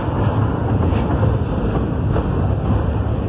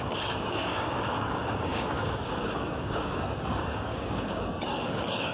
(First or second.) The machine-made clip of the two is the second